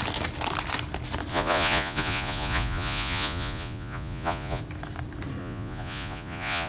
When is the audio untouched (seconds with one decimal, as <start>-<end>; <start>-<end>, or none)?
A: 0.0-1.3; 4.6-5.4